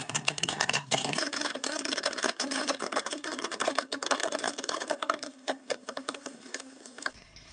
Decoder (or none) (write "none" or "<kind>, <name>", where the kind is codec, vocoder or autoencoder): codec, SNAC